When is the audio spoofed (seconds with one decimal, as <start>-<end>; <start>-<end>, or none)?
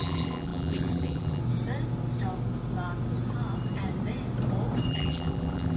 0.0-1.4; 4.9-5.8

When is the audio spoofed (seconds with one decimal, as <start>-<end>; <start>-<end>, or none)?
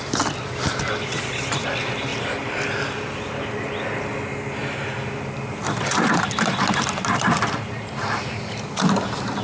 none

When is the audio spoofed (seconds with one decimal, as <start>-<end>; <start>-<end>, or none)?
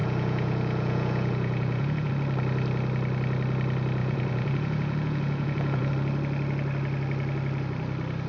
0.0-2.1; 4.0-5.9